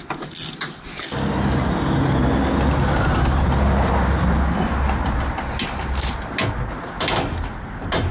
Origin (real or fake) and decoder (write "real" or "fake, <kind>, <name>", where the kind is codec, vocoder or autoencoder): real